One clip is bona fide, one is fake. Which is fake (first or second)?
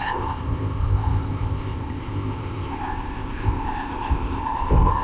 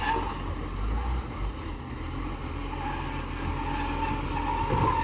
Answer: first